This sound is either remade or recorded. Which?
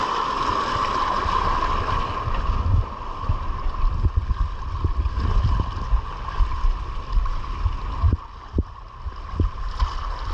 recorded